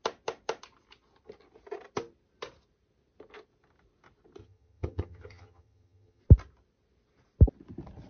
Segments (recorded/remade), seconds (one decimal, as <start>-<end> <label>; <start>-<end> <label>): 0.0-4.4 recorded; 4.4-6.2 remade; 6.2-8.1 recorded